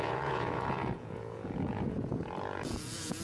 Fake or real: fake